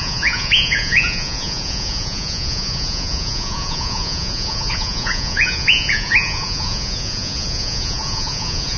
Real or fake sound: fake